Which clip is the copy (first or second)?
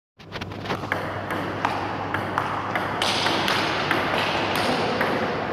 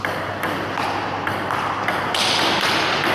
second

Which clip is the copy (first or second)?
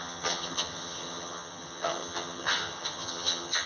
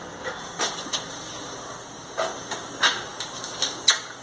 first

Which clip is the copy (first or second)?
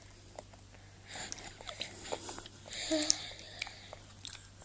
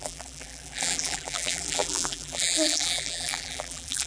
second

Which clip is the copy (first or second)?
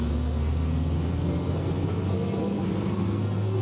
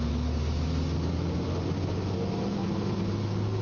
first